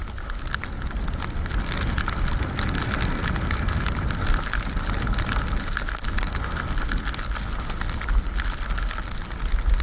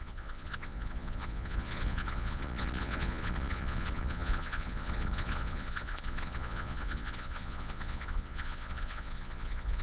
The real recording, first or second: first